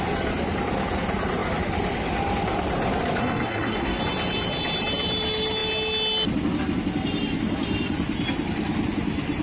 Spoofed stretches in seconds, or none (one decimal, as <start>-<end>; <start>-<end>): 3.2-4.0